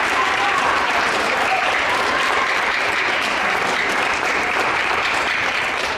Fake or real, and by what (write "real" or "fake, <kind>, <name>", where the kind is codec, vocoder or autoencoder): fake, vocoder, BigVGAN v2